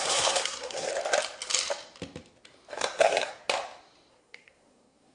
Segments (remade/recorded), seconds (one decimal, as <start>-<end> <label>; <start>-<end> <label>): 0.0-0.9 remade; 0.9-2.7 recorded; 2.7-3.4 remade; 3.4-4.1 recorded; 4.1-5.1 remade